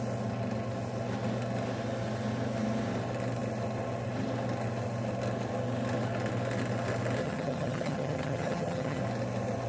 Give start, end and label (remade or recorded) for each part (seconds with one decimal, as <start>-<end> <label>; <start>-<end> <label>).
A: 0.0-7.2 recorded; 7.2-9.0 remade; 9.0-9.7 recorded